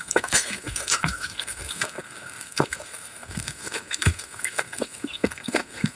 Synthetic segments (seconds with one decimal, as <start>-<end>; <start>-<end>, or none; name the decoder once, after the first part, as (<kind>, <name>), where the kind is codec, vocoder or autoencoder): 0.0-6.0 (codec, SNAC)